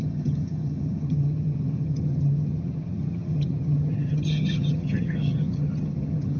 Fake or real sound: fake